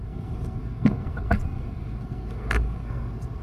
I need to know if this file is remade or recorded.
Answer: remade